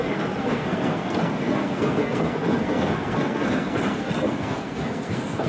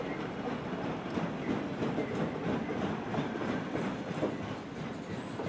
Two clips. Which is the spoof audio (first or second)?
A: first